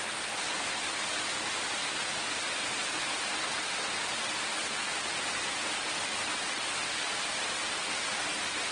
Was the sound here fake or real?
real